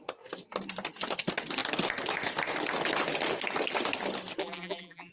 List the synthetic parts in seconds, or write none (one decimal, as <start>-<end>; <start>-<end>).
4.4-5.1